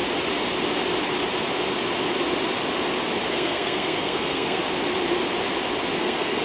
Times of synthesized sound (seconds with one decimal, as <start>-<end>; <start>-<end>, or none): 3.3-4.6; 6.0-6.4